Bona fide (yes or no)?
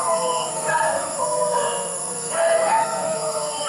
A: no